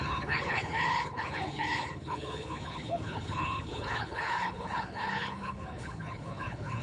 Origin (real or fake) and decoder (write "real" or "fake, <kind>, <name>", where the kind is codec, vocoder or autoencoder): fake, codec, HILCodec